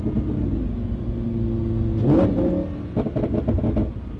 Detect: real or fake real